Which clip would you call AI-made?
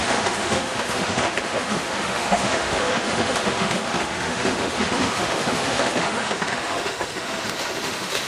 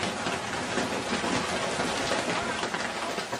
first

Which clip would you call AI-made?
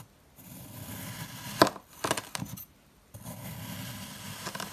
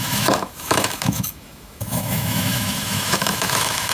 second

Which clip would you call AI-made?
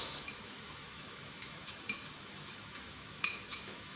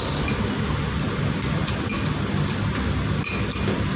first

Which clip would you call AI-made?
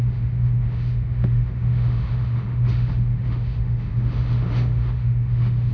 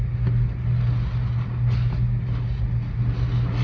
first